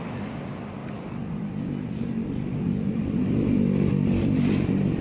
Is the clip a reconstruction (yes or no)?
no